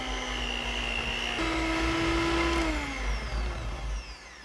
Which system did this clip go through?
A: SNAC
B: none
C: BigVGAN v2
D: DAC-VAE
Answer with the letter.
B